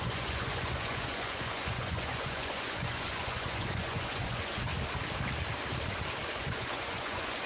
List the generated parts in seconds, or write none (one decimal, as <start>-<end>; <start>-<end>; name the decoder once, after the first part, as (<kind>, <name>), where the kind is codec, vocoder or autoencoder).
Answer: 0.0-4.7 (vocoder, Vocos); 6.3-7.5